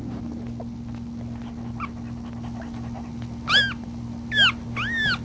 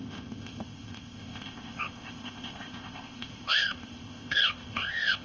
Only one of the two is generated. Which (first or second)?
second